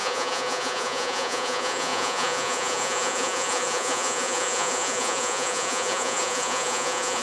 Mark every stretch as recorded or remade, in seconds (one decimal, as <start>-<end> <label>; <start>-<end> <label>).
0.0-7.2 remade